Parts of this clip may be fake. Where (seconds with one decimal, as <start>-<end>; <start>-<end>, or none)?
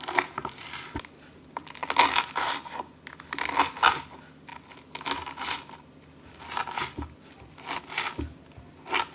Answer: none